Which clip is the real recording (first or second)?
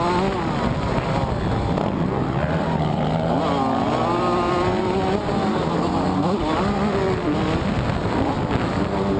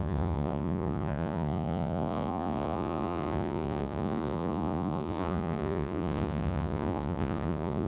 first